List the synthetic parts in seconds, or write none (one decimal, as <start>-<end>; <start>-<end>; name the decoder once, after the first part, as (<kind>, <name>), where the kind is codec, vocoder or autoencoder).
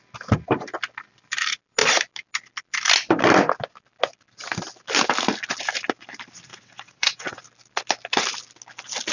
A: 6.5-7.4 (vocoder, WaveNeXt)